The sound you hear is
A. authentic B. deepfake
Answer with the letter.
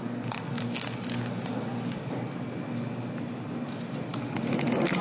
A